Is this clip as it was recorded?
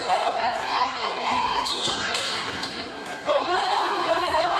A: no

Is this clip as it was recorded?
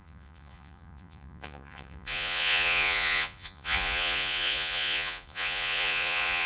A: no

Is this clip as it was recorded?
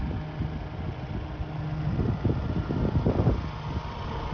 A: yes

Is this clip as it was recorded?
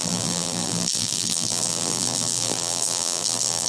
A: no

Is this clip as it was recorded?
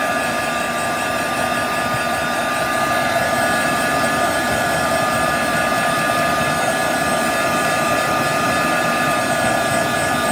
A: no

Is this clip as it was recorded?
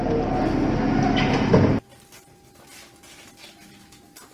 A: yes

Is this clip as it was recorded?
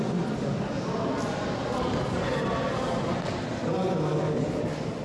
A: yes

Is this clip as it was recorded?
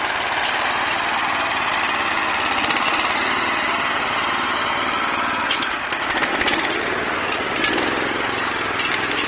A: no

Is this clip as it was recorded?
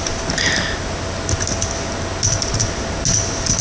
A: yes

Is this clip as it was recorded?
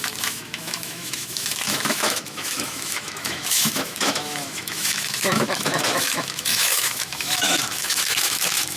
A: no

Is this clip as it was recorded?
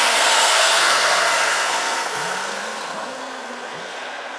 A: no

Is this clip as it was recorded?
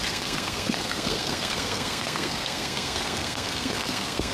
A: no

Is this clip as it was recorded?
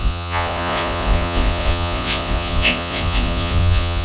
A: no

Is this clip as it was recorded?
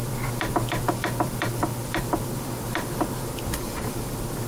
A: no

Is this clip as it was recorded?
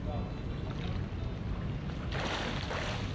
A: yes